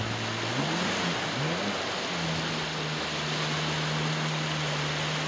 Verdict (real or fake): real